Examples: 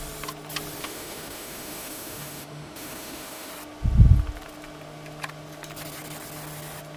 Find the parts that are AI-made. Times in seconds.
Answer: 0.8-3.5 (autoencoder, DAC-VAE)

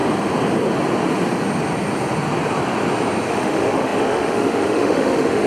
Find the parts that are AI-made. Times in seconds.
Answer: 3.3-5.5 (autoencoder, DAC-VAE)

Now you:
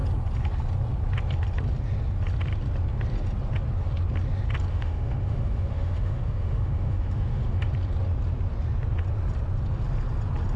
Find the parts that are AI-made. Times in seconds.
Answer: 4.7-7.7 (autoencoder, DAC-VAE)

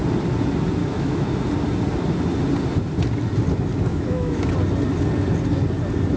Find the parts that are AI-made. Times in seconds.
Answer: 0.8-1.4 (autoencoder, DAC-VAE); 3.9-4.5

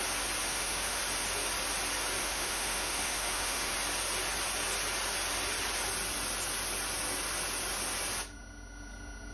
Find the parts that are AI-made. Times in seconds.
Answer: 0.4-1.0 (autoencoder, DAC-VAE); 2.2-3.7

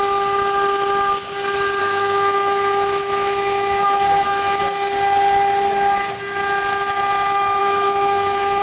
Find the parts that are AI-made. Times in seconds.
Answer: 1.8-4.6 (autoencoder, DAC-VAE); 7.6-8.6

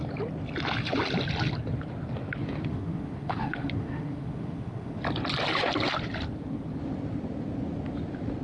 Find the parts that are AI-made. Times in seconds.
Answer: 2.7-5.0 (autoencoder, DAC-VAE)